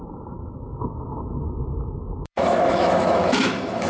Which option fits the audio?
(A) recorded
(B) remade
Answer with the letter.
B